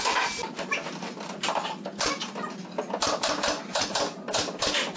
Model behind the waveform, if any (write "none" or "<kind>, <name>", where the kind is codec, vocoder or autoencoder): none